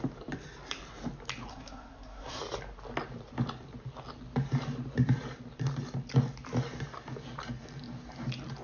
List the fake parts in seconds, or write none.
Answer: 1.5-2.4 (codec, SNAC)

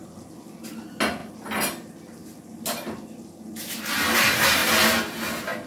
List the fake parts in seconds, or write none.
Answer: none

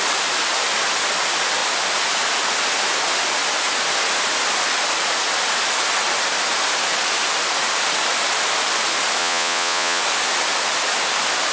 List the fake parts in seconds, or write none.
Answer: 9.2-10.0 (vocoder, Vocos)

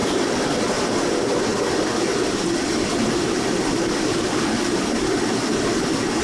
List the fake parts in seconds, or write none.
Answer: 0.0-0.6 (vocoder, BigVGAN v2); 1.5-5.2

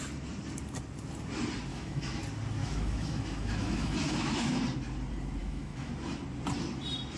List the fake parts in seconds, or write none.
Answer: 1.7-2.2 (autoencoder, DAC-VAE); 2.6-4.6; 5.4-5.9

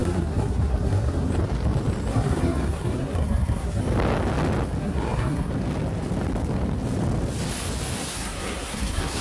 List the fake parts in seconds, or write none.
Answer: 0.0-1.3 (codec, SNAC); 2.1-3.8; 4.8-5.5; 8.0-9.2